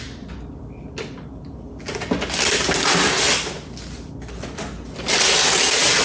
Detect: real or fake real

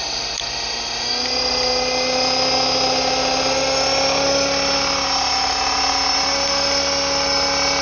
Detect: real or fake real